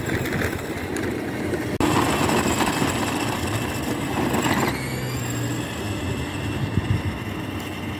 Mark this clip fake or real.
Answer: real